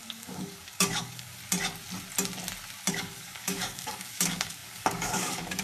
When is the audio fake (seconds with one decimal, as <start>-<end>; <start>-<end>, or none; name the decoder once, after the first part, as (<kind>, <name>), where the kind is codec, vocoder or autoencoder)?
0.0-1.4 (codec, DAC); 2.9-5.6